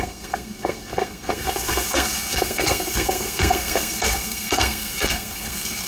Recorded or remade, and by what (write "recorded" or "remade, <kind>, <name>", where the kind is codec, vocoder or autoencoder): remade, codec, SNAC